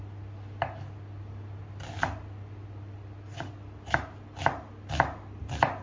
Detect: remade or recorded recorded